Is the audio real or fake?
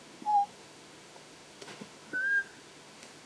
fake